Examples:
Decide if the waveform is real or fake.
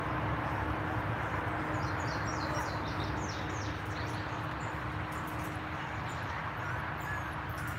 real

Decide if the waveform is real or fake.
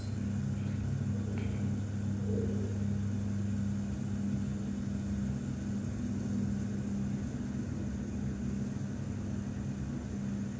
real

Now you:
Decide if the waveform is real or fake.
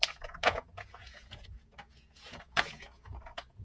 fake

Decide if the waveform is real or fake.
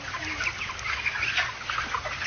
real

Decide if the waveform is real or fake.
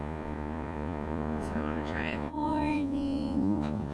fake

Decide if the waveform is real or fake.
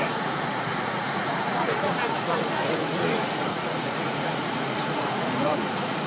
fake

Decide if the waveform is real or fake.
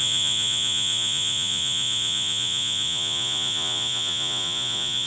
fake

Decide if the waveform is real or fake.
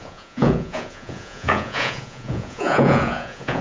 fake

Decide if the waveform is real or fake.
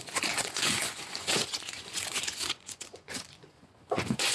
fake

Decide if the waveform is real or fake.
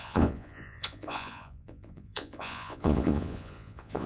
fake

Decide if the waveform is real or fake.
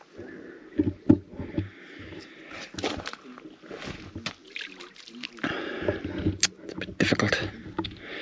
real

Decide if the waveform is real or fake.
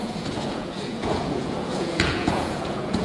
fake